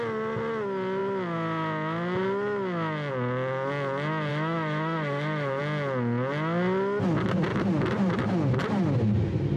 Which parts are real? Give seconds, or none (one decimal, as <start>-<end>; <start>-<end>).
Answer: 0.0-4.3; 5.6-9.6